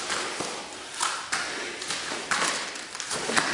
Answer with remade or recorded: recorded